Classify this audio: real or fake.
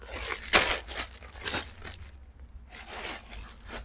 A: real